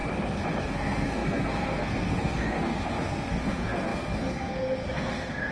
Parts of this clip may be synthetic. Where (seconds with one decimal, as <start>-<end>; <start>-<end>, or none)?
0.6-5.5